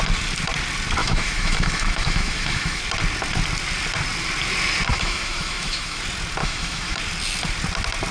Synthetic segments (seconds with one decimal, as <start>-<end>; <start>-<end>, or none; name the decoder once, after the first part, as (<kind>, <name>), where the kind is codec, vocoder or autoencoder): 1.0-2.8 (autoencoder, DAC-VAE); 4.9-6.0; 6.4-7.0

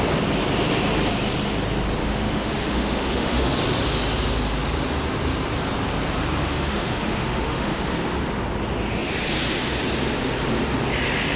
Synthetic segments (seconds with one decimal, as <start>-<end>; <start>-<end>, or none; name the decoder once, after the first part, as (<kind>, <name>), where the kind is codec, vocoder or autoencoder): 2.0-3.5 (autoencoder, DAC-VAE); 6.4-7.8

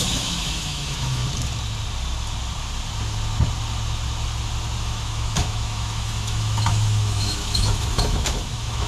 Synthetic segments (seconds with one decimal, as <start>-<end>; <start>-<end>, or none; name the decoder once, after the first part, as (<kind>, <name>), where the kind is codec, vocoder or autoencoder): 0.0-1.2 (autoencoder, DAC-VAE); 4.8-8.9